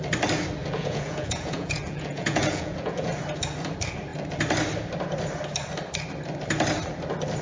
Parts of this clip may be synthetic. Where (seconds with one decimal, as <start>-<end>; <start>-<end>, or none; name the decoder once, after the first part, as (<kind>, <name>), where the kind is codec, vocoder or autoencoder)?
0.6-3.2 (vocoder, Vocos)